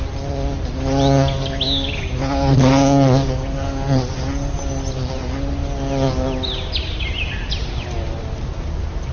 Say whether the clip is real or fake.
real